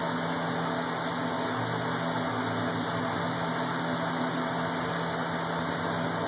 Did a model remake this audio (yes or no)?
no